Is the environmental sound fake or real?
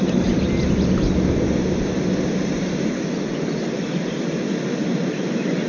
real